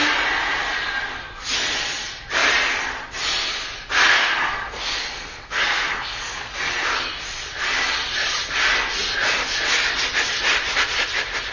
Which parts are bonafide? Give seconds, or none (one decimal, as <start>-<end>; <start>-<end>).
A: 0.0-4.1; 6.5-11.5